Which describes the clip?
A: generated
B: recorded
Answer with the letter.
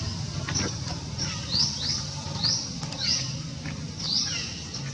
B